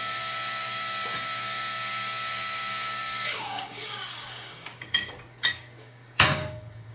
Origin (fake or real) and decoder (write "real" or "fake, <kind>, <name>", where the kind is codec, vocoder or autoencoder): fake, codec, DAC